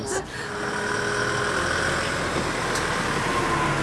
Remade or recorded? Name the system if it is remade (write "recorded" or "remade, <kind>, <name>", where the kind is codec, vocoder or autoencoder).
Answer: recorded